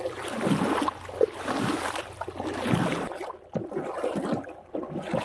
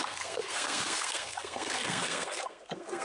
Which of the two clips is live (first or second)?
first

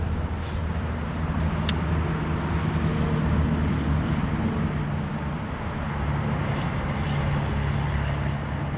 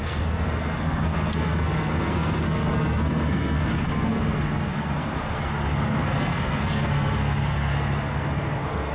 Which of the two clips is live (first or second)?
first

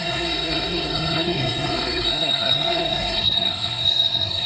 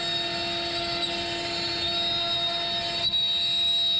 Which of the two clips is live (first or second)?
second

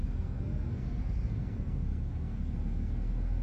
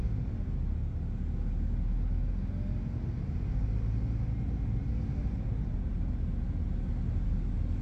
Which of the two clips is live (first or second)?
second